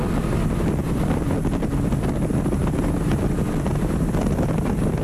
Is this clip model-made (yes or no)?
no